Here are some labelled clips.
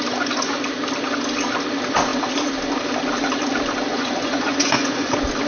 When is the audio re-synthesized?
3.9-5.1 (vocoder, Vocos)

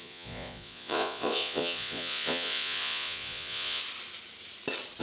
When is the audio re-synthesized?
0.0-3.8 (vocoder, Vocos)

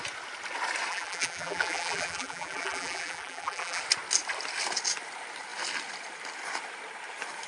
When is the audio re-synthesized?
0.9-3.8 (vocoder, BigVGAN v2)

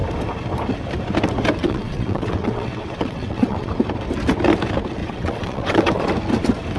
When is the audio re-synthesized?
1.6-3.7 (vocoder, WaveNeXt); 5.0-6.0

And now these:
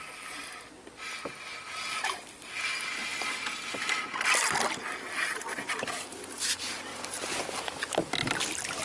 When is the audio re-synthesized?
none

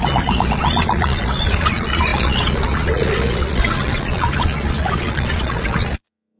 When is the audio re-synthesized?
0.0-6.4 (vocoder, Vocos)

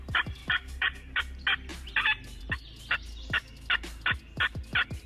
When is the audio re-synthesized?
0.4-1.2 (codec, DAC)

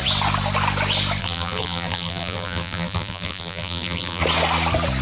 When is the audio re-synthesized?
1.2-4.2 (vocoder, BigVGAN v2)